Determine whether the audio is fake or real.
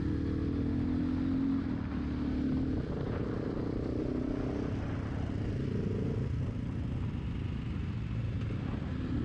real